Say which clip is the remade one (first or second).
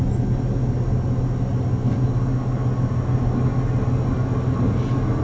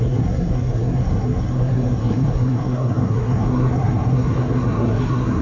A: second